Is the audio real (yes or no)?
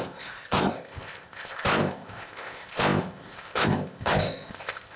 no